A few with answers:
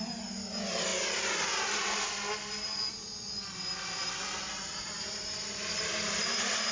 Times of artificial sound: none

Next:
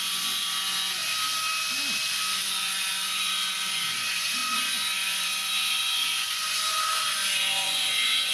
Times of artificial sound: 0.0-1.0 (vocoder, Vocos); 2.5-8.3

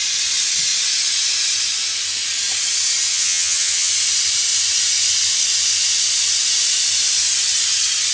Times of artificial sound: 3.1-3.9 (vocoder, HiFi-GAN)

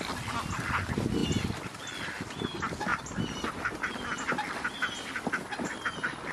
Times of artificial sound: none

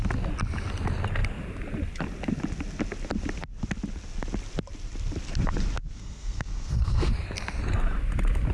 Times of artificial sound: 5.8-7.1 (codec, SNAC)

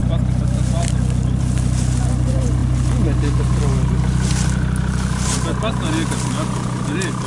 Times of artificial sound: none